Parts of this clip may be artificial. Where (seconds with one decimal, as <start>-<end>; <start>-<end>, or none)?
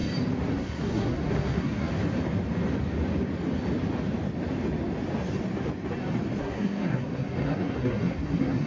0.5-1.9; 6.4-8.7